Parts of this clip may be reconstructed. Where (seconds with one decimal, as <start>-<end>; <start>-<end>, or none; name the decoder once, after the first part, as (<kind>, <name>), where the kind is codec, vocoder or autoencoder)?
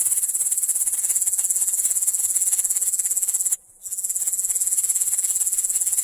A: 0.0-6.0 (vocoder, Vocos)